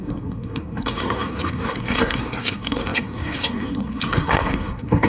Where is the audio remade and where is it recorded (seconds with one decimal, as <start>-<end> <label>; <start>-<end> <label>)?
0.0-5.1 remade